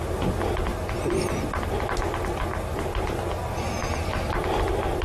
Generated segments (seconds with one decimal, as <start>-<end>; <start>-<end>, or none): 2.5-3.2